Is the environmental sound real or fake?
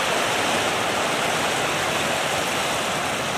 real